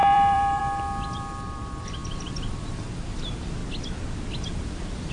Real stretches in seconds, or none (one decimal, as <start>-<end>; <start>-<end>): 3.6-4.3